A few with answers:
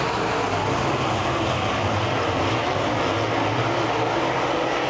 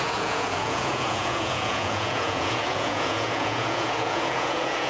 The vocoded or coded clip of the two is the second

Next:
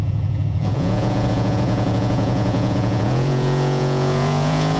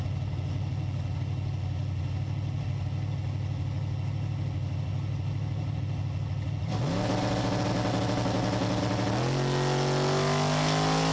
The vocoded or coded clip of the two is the first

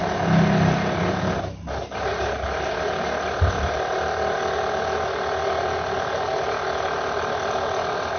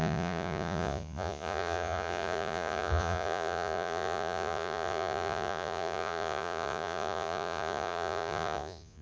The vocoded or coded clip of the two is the second